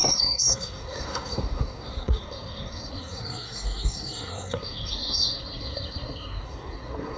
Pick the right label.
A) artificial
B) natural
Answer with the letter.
A